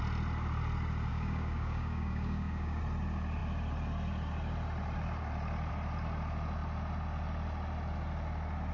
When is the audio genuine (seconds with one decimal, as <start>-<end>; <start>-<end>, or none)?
0.0-1.1; 2.8-8.7